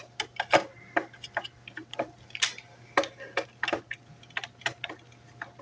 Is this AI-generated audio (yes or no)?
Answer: no